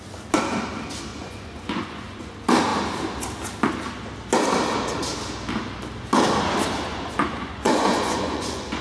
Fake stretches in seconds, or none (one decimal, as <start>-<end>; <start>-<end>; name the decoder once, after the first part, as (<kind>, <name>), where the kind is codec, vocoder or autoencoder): 1.1-2.3 (vocoder, Vocos); 6.9-8.8